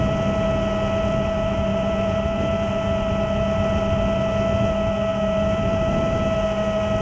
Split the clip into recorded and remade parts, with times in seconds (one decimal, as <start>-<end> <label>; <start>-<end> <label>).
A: 0.0-1.7 recorded; 1.7-2.7 remade; 2.7-5.1 recorded; 5.1-6.2 remade; 6.2-7.0 recorded